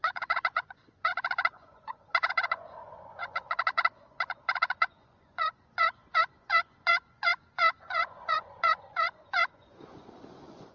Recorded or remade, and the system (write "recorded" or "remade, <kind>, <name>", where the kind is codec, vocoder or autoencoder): remade, vocoder, Vocos